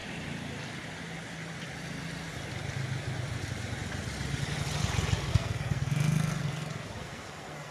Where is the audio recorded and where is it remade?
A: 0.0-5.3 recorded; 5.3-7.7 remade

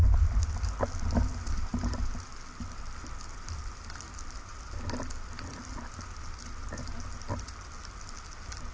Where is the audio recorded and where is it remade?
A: 0.0-8.7 recorded

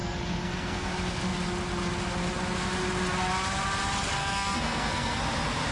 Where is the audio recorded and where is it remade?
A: 0.0-0.9 remade; 0.9-4.2 recorded; 4.2-5.2 remade; 5.2-5.7 recorded